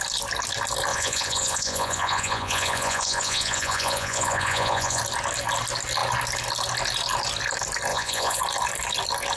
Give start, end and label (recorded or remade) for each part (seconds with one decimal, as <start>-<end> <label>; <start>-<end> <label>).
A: 0.0-0.9 recorded; 0.9-5.0 remade; 5.0-7.9 recorded; 7.9-8.4 remade; 8.4-9.4 recorded